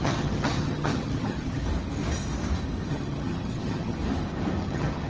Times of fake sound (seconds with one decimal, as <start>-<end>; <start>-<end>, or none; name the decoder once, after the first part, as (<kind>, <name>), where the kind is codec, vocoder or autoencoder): 0.0-1.6 (vocoder, HiFi-GAN); 2.9-4.0; 4.6-5.1